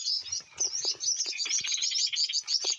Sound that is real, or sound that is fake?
real